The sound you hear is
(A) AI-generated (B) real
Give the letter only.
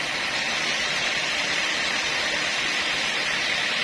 B